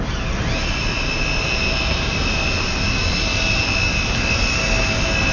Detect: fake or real real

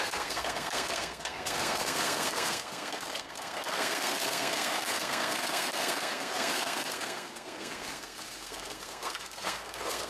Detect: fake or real fake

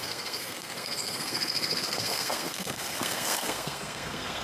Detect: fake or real fake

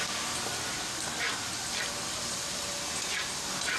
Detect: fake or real real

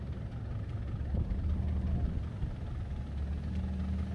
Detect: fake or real real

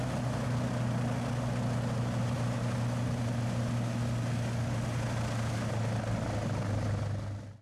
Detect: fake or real real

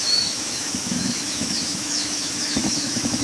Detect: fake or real fake